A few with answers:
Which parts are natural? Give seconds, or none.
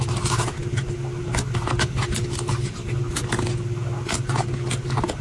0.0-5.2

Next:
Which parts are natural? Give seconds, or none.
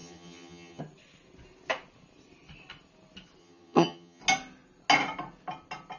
0.8-3.4; 4.2-6.0